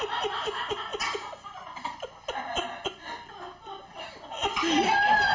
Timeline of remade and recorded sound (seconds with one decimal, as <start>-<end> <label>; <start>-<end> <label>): 0.0-5.3 recorded